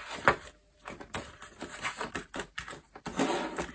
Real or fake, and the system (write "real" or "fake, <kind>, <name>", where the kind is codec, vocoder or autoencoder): real